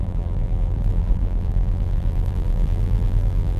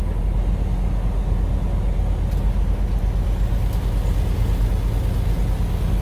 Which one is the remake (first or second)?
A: first